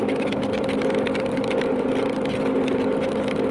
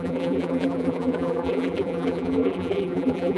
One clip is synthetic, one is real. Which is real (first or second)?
first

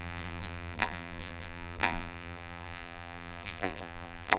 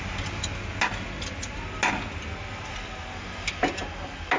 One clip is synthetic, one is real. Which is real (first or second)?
second